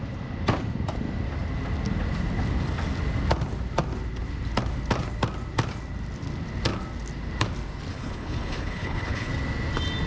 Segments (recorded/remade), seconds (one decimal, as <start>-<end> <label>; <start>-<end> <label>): 0.0-7.9 recorded; 7.9-9.3 remade; 9.3-10.1 recorded